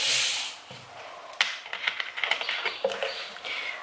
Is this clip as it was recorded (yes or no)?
yes